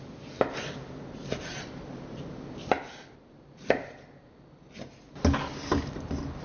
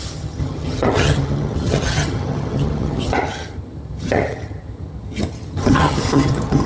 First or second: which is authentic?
first